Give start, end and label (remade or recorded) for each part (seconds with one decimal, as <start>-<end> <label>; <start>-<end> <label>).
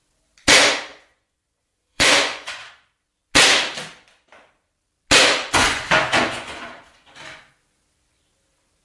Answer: 0.0-0.9 recorded; 0.9-2.7 remade; 2.7-5.4 recorded; 5.4-7.4 remade; 7.4-8.8 recorded